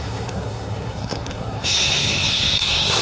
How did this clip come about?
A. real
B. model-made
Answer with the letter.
B